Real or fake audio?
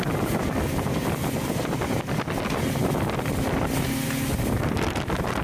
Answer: real